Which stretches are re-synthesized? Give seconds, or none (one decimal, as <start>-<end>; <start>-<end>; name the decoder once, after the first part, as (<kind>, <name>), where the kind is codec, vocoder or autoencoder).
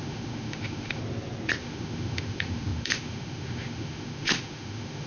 0.0-1.0 (autoencoder, DAC-VAE); 1.6-5.1